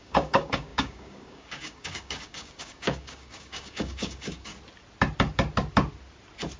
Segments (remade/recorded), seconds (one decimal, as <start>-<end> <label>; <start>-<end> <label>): 0.0-4.5 remade; 4.5-6.6 recorded